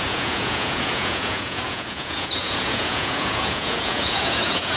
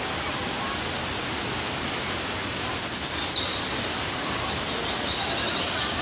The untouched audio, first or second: second